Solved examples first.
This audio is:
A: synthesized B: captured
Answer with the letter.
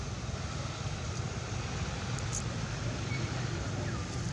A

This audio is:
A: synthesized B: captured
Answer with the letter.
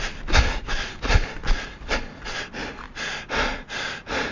B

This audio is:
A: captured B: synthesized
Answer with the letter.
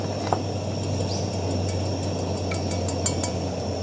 A